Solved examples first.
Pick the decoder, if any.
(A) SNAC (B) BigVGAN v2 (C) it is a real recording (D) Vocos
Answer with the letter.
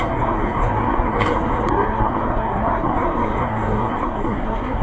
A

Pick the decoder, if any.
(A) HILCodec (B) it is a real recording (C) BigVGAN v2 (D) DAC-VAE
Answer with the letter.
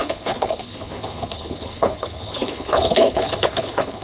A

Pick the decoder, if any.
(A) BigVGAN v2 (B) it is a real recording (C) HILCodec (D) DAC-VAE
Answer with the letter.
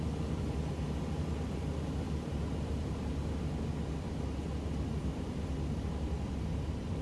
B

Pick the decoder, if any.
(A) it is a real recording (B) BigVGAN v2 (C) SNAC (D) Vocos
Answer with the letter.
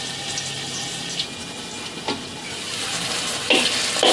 A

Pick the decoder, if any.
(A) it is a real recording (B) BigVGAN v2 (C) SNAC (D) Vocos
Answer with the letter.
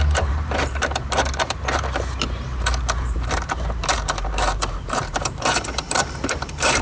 B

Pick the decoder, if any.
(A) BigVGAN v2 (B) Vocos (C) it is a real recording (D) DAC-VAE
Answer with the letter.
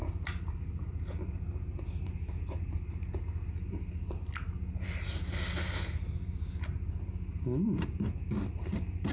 C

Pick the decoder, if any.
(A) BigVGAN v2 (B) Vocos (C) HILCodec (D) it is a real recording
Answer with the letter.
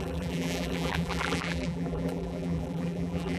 A